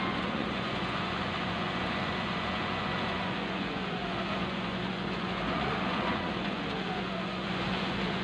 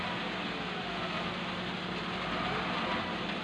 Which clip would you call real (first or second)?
second